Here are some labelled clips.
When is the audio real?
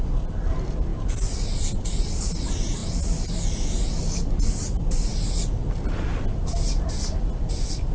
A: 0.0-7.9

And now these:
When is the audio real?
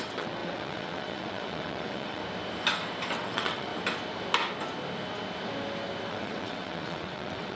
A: 2.2-3.1; 3.7-6.1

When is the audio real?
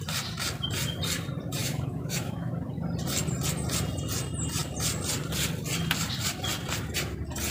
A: 0.0-1.6; 2.5-7.5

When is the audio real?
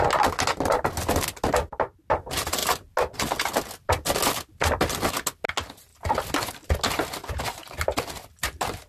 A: 0.0-8.9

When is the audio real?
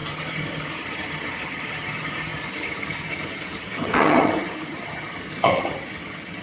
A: none